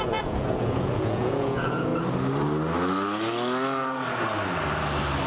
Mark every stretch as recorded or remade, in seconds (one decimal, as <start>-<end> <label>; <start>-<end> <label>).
0.0-1.9 remade; 1.9-5.3 recorded